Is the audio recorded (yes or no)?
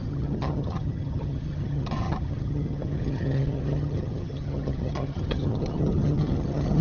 no